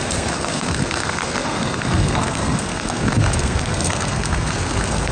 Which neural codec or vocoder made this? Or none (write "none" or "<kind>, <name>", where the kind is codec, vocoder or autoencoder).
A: codec, SNAC